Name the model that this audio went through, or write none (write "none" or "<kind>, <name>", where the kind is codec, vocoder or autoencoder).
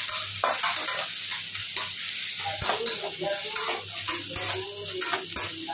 none